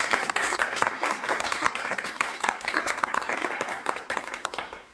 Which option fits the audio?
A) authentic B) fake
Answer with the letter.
B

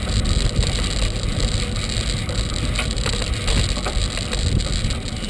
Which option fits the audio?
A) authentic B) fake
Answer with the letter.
A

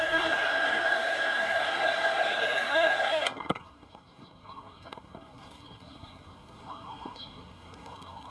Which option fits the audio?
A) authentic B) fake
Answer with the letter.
B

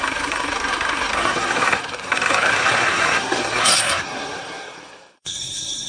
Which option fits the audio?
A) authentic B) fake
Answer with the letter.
B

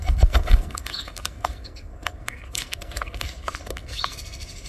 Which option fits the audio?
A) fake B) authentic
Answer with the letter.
A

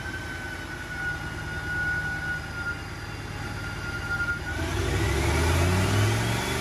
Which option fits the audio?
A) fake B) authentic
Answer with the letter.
B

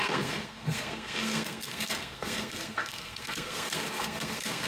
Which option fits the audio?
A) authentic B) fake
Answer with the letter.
B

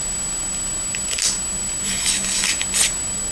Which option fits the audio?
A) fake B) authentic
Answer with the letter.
B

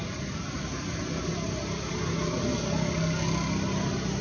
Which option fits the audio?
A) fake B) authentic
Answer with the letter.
B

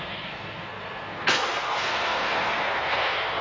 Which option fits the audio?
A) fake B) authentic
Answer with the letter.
A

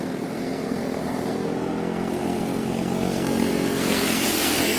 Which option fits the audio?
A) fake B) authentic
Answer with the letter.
A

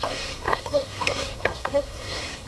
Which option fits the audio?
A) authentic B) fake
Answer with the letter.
B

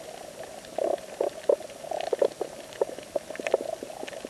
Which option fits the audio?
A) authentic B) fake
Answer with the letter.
A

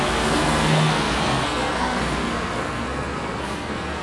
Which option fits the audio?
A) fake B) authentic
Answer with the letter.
A